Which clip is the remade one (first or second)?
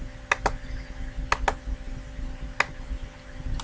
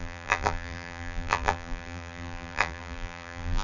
second